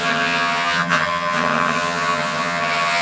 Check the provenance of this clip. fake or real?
fake